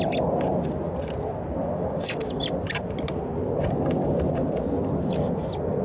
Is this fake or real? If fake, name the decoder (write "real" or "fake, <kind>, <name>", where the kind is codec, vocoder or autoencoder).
real